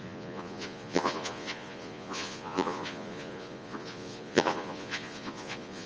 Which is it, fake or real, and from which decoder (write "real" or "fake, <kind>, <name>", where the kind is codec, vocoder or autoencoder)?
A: fake, vocoder, Vocos